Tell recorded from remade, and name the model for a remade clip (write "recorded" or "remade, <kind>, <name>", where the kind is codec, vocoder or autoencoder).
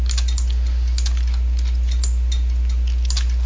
recorded